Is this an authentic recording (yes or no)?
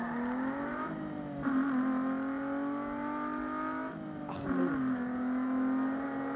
yes